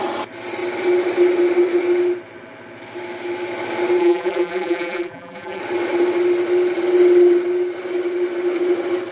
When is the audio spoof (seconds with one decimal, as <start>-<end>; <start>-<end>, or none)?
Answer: 4.0-5.6